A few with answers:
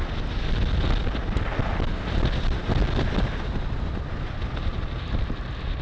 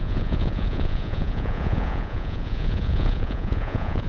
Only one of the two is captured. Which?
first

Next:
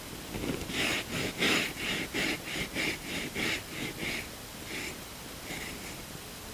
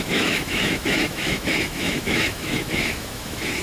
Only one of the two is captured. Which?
first